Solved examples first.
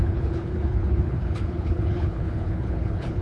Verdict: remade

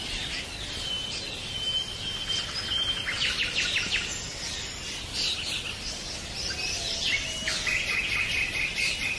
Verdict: recorded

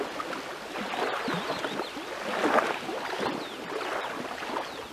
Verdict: recorded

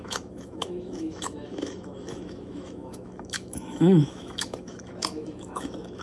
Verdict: remade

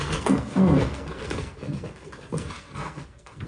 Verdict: remade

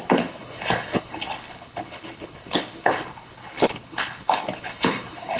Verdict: remade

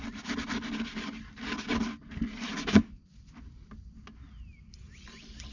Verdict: recorded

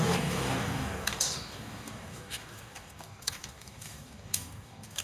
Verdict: remade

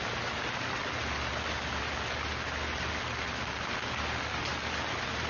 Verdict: recorded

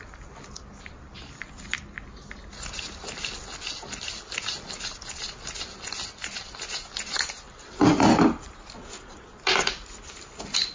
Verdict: recorded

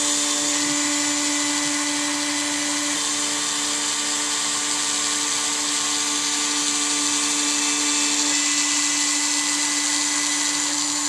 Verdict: recorded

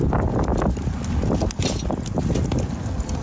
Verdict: recorded